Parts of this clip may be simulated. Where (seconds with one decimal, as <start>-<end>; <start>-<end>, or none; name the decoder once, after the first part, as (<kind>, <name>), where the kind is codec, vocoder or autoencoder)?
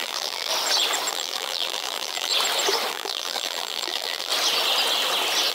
0.0-0.5 (vocoder, BigVGAN v2); 1.1-2.3; 2.9-4.3